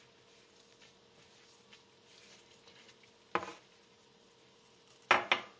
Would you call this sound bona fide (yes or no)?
yes